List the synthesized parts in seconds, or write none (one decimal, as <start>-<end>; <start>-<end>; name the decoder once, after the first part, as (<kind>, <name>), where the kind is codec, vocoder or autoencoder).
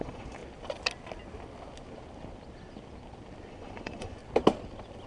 0.0-0.4 (vocoder, Vocos); 3.5-4.2